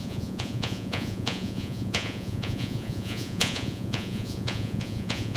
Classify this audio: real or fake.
fake